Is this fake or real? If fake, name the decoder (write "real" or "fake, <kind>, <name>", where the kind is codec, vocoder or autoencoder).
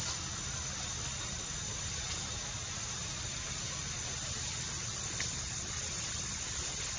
real